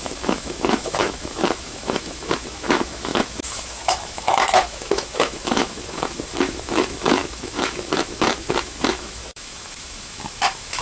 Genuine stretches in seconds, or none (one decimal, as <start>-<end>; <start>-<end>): none